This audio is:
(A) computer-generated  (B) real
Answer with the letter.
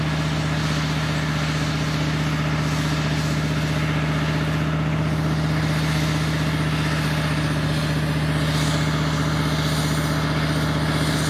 B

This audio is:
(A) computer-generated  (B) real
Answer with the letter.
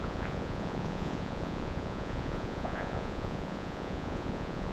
A